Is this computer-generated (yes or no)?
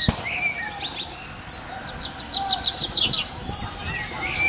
no